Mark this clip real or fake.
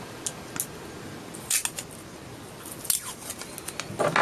real